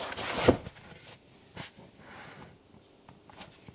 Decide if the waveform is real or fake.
real